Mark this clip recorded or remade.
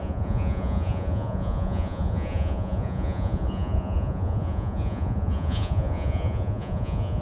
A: remade